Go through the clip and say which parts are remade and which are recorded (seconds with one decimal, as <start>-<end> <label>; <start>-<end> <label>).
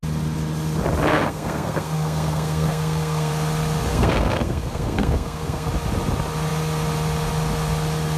0.0-1.1 recorded; 1.1-3.3 remade; 3.3-3.9 recorded; 3.9-5.7 remade; 5.7-8.2 recorded